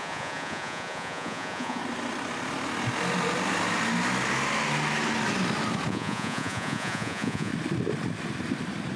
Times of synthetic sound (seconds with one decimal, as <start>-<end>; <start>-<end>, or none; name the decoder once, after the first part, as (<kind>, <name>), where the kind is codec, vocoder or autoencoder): 0.0-1.8 (vocoder, Vocos); 5.9-7.5